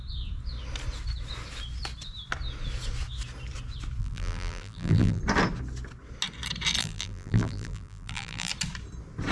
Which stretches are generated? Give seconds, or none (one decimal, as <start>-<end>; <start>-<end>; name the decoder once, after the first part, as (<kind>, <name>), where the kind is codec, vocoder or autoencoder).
4.0-5.2 (vocoder, BigVGAN v2); 6.8-8.5